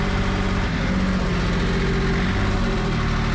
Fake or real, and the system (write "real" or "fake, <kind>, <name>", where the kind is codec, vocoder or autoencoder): real